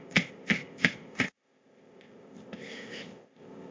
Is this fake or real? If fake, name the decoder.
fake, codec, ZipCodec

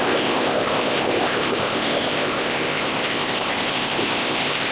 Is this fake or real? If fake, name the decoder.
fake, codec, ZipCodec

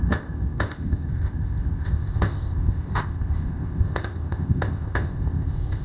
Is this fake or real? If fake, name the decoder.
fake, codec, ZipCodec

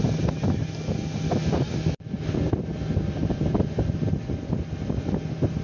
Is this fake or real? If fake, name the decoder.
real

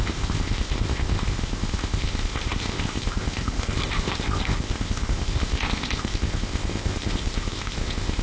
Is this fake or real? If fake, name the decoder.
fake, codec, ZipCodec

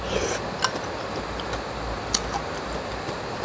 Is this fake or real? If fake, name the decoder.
real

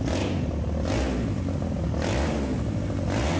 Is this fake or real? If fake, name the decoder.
real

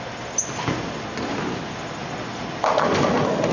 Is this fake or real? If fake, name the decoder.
real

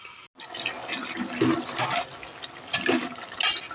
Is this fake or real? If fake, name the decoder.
real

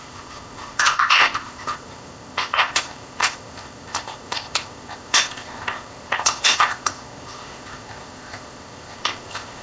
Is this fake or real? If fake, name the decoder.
fake, codec, ZipCodec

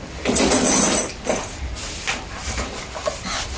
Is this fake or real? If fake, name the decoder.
real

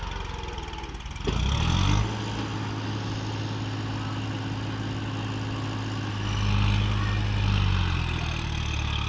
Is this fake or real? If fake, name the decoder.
real